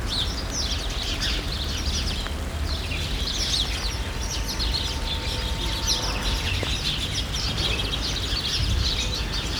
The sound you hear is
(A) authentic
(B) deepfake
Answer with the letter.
A